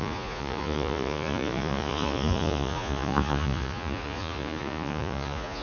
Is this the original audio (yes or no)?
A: no